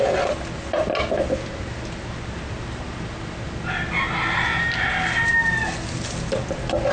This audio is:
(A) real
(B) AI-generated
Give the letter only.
A